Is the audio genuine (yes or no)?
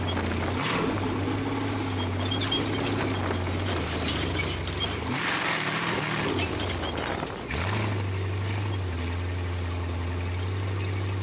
yes